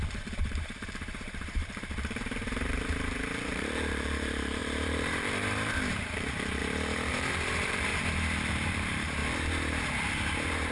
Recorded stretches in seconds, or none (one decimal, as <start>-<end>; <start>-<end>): 6.6-7.1; 7.9-8.5; 9.2-10.7